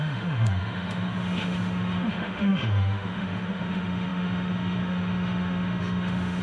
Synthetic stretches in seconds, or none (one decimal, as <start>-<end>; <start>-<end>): 0.0-6.4